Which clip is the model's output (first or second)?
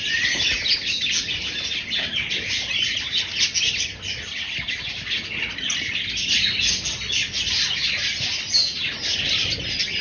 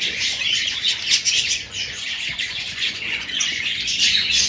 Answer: second